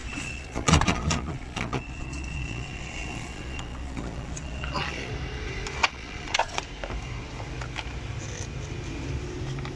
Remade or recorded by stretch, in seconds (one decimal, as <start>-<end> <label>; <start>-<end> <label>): 0.0-5.1 remade; 5.1-5.8 recorded; 5.8-6.6 remade; 6.6-9.8 recorded